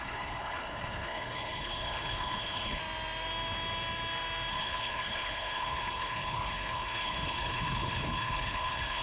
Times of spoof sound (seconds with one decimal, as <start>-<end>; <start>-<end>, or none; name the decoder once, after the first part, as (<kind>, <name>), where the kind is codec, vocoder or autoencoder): 0.0-2.8 (codec, HILCodec); 4.5-9.0